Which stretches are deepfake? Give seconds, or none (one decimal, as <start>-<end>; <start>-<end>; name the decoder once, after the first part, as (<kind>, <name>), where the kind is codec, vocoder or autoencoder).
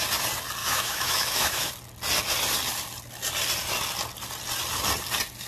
0.6-1.7 (autoencoder, DAC-VAE)